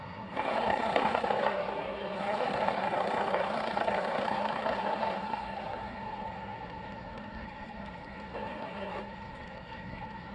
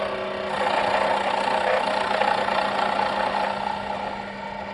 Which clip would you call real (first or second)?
second